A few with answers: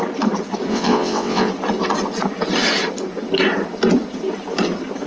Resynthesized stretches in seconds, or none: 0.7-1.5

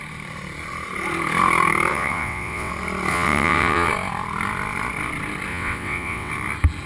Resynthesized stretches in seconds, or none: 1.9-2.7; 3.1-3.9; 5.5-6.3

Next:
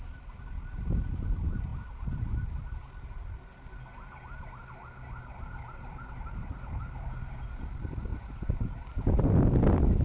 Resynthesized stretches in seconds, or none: none

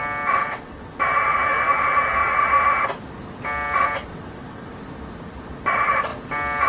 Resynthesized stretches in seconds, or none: 0.4-1.0; 4.1-4.8